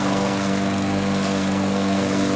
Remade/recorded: remade